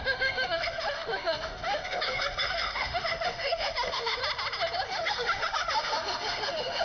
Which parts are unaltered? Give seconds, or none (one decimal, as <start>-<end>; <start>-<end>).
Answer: 4.2-4.9